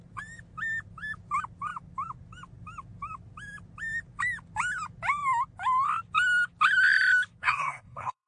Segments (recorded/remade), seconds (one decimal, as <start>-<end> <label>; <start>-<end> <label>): 0.0-7.4 recorded; 7.4-8.3 remade